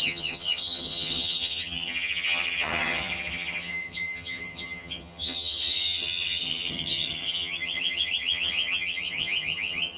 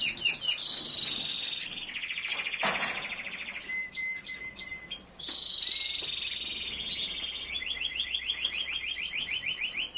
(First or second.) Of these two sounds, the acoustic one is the second